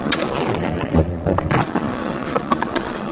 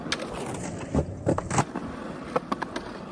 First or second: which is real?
second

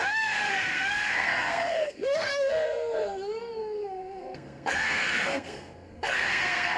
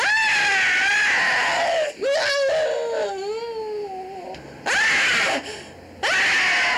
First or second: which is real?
second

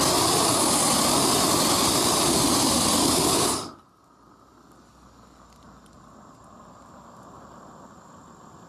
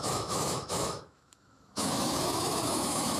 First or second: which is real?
first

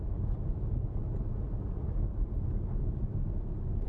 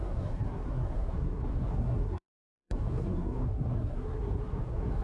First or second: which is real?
first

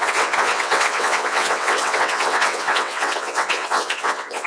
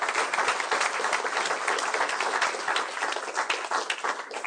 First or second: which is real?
second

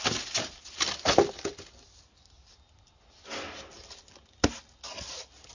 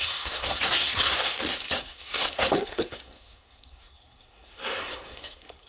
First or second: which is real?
first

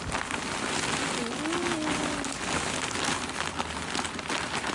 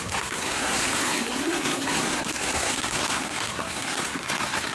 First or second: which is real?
first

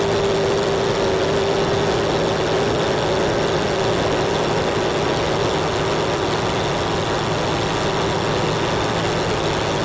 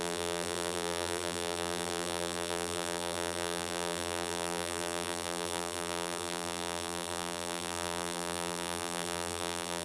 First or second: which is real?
first